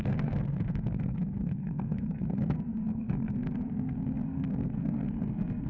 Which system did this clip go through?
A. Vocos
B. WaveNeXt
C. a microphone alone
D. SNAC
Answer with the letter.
D